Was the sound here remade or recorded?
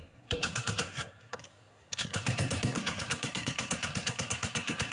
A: remade